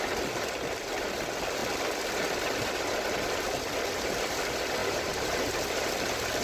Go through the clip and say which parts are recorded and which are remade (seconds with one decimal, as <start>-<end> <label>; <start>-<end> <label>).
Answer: 0.0-4.8 recorded; 4.8-5.8 remade; 5.8-6.4 recorded